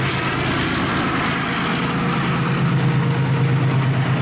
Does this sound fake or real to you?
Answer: real